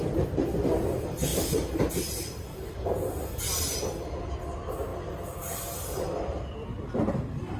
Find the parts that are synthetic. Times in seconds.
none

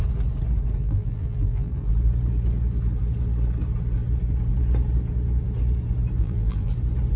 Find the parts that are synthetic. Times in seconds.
0.8-1.9 (vocoder, BigVGAN v2); 6.2-6.7

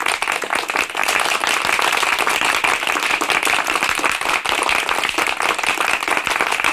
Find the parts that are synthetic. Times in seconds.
none

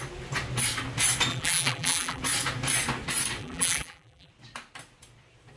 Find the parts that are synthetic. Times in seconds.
1.3-2.2 (vocoder, BigVGAN v2); 3.4-4.3

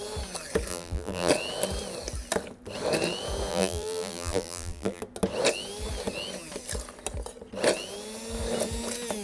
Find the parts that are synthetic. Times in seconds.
0.7-1.3 (vocoder, BigVGAN v2); 3.5-5.0